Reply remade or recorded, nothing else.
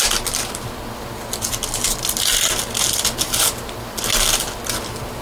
recorded